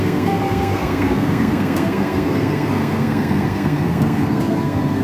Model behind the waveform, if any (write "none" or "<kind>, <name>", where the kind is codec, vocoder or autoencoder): codec, SNAC